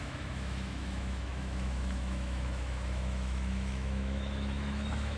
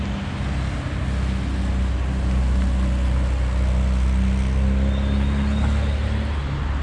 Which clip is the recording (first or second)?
second